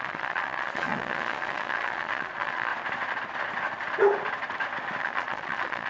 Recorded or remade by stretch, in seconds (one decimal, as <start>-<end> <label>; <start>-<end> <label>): 0.0-2.7 remade; 2.7-5.0 recorded; 5.0-5.9 remade